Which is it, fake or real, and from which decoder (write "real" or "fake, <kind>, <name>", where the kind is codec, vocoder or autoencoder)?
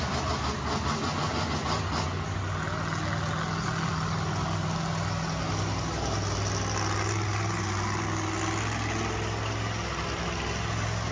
real